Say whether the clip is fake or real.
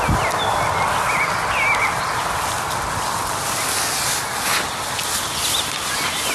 real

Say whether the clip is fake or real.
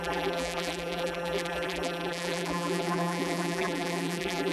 fake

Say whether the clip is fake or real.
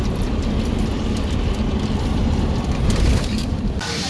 fake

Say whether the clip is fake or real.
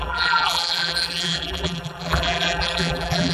fake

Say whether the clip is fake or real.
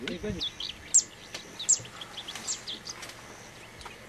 real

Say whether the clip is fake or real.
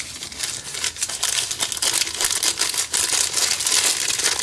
real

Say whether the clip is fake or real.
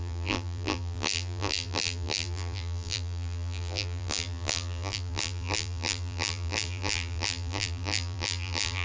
fake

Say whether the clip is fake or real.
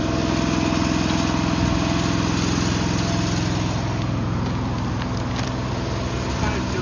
real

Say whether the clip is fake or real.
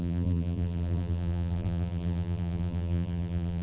fake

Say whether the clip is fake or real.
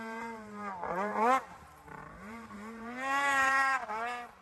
fake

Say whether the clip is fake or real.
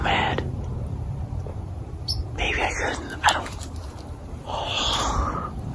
fake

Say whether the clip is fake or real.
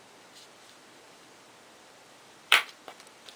fake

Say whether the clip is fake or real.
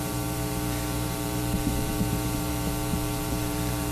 fake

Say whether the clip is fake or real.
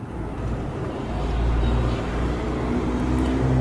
fake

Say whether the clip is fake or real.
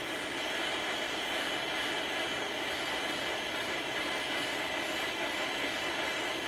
real